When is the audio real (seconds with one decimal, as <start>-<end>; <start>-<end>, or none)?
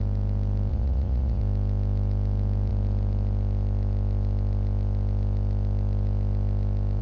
0.0-0.7; 1.4-7.0